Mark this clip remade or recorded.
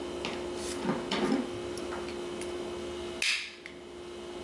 recorded